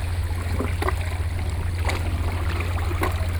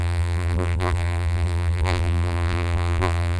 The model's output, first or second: second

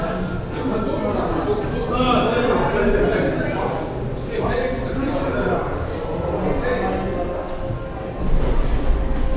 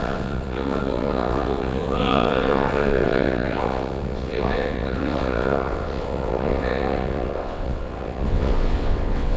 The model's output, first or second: second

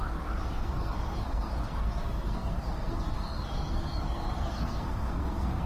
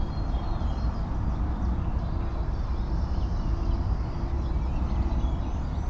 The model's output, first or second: first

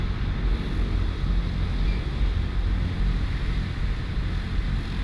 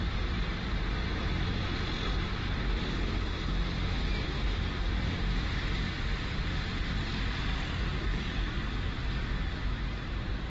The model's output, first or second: second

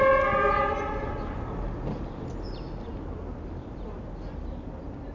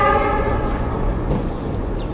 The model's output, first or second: second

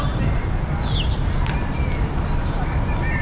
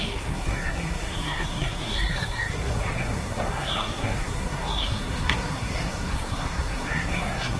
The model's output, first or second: second